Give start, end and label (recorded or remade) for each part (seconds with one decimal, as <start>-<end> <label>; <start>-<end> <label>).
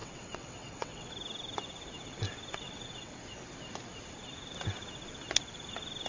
0.0-1.1 remade; 1.1-2.5 recorded; 2.5-3.1 remade; 3.1-6.1 recorded